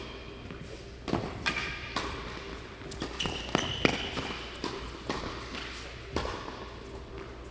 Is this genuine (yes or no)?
yes